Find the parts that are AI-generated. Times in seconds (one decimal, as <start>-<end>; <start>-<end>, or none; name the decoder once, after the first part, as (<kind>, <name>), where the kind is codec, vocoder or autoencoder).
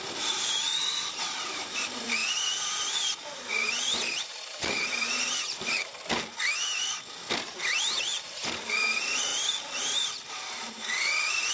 0.0-2.2 (vocoder, BigVGAN v2); 3.5-5.9; 7.4-9.3; 9.8-11.5